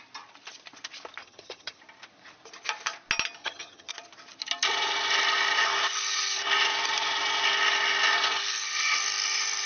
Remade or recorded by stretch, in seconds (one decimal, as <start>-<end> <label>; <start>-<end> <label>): 0.0-1.2 recorded; 1.2-1.8 remade; 1.8-3.4 recorded; 3.4-3.9 remade; 3.9-9.7 recorded